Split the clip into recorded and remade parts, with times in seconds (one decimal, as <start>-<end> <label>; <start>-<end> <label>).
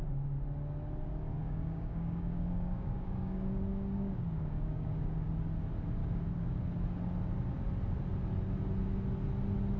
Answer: 0.0-1.4 recorded; 1.4-5.3 remade; 5.3-6.0 recorded; 6.0-6.6 remade; 6.6-9.8 recorded